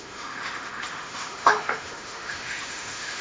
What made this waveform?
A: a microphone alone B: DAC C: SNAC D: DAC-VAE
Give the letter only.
D